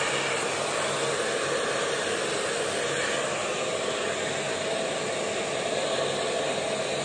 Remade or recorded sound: recorded